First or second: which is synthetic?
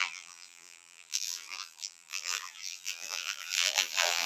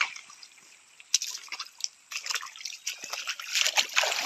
first